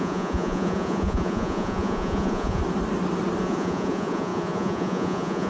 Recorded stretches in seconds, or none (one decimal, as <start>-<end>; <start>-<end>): 2.6-3.4